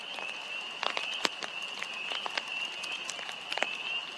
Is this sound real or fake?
real